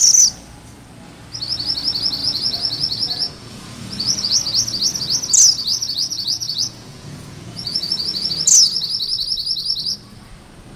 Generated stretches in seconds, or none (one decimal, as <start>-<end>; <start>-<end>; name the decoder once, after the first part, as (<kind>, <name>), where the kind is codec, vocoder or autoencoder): 2.2-4.4 (vocoder, Vocos); 5.7-8.3